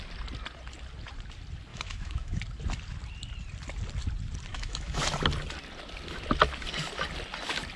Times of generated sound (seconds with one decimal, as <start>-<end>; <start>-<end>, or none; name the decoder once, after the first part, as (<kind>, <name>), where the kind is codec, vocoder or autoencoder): 1.7-2.4 (autoencoder, DAC-VAE); 4.5-5.0